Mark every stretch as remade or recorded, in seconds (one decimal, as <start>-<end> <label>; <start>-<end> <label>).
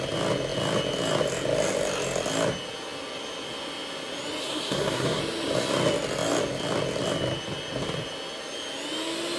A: 0.0-4.4 recorded; 4.4-5.2 remade; 5.2-9.4 recorded